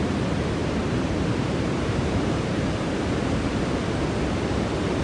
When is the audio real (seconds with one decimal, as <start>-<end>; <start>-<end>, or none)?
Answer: 0.0-0.6; 3.6-5.0